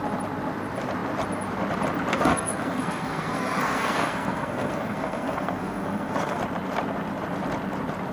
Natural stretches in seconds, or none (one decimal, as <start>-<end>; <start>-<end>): 0.0-2.1; 6.4-8.1